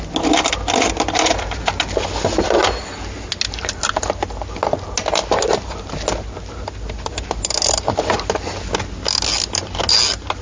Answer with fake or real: real